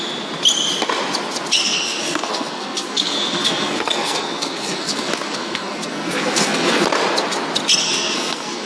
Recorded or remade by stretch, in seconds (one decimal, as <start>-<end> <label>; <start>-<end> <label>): 0.0-1.6 recorded; 1.6-6.8 remade; 6.8-7.8 recorded; 7.8-8.7 remade